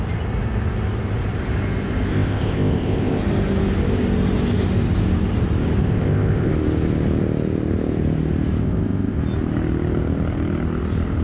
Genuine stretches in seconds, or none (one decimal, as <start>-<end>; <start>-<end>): 0.0-2.1; 3.2-5.8; 6.5-8.6; 9.2-11.2